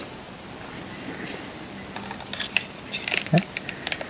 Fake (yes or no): no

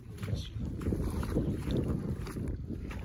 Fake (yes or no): no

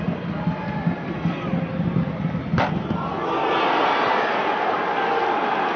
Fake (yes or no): no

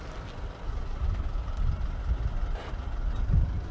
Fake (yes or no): no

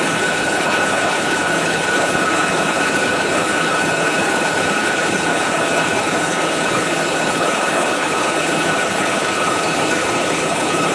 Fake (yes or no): yes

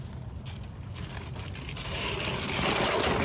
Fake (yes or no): no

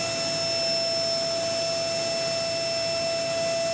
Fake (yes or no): no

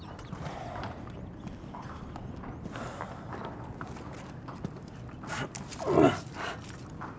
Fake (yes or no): yes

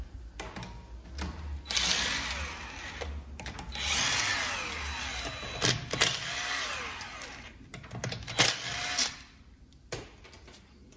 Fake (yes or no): no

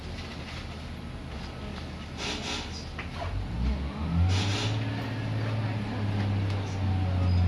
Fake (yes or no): no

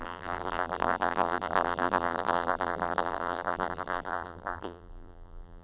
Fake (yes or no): yes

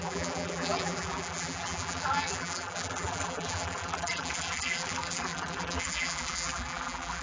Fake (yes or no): yes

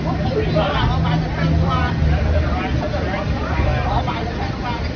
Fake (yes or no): yes